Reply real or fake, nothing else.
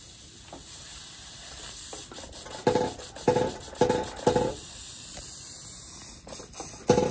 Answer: real